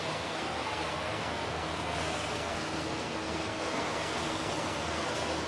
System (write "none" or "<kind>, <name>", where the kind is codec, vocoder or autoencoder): codec, SNAC